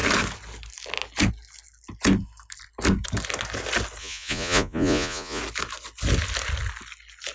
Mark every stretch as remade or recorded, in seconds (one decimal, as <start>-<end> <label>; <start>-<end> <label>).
0.0-4.0 recorded; 4.0-5.4 remade; 5.4-7.3 recorded